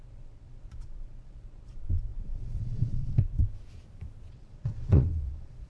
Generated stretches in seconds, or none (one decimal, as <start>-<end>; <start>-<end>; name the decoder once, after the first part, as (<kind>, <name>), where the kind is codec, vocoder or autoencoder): 0.0-3.4 (vocoder, Vocos); 4.3-5.7